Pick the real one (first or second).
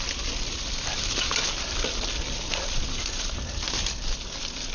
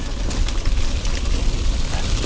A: first